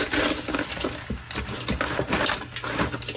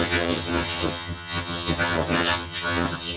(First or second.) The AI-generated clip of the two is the second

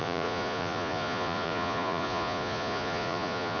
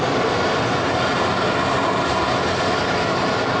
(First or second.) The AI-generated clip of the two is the first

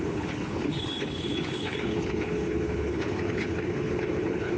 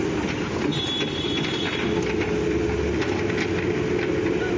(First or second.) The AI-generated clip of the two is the first